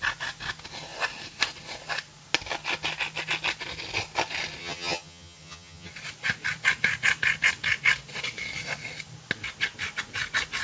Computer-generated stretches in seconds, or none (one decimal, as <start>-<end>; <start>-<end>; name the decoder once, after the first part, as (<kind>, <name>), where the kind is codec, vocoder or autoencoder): 4.6-5.9 (vocoder, HiFi-GAN)